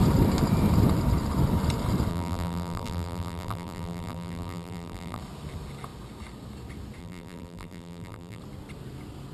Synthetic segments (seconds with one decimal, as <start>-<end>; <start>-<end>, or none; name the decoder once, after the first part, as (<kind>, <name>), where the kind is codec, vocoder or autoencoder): 2.1-5.2 (vocoder, BigVGAN v2); 7.0-8.4